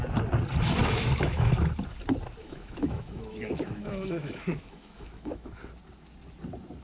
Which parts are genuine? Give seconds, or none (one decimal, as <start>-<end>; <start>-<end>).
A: 0.0-0.8; 1.7-2.4; 5.6-6.8